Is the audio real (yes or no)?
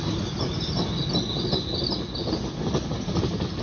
yes